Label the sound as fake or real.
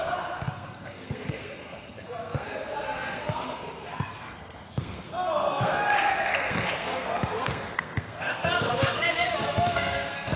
fake